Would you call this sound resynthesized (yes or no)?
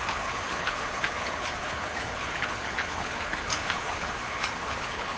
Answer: yes